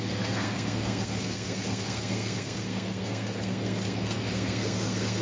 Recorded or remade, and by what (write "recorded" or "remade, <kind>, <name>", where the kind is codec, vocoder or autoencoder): remade, codec, SNAC